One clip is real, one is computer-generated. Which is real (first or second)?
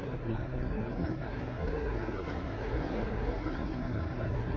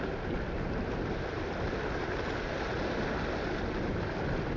second